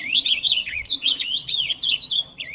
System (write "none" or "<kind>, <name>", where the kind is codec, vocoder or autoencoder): vocoder, Vocos